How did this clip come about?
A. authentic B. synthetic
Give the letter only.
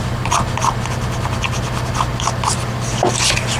A